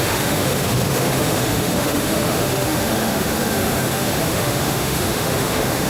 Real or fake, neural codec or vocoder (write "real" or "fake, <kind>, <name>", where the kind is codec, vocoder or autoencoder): fake, autoencoder, DAC-VAE